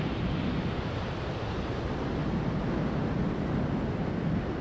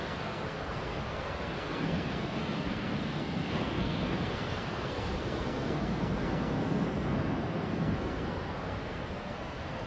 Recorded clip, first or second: first